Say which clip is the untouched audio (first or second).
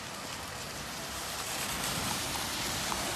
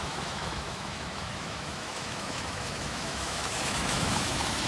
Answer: first